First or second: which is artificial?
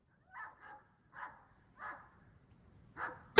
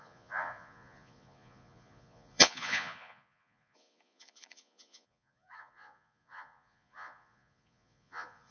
second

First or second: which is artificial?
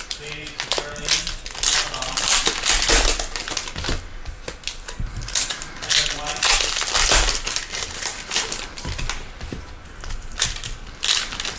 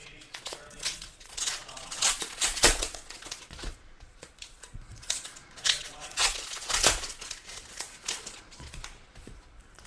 second